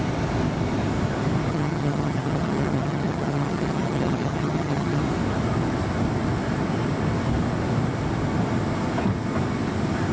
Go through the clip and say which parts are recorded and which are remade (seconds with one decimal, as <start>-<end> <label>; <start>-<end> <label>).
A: 0.0-1.5 recorded; 1.5-5.0 remade; 5.0-10.1 recorded